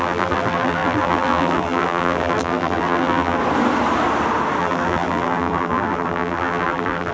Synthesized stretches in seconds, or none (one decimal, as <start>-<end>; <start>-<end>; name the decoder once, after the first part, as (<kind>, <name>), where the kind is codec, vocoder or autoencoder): 0.0-3.4 (vocoder, BigVGAN v2); 4.6-7.1